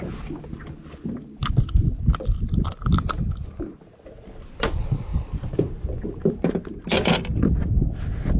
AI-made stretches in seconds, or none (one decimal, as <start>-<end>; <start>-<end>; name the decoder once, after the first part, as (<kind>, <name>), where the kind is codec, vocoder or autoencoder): none